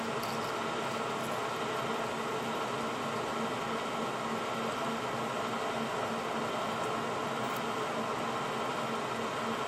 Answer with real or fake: real